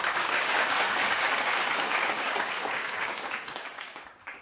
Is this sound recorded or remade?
remade